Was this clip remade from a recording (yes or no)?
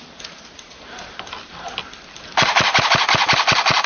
yes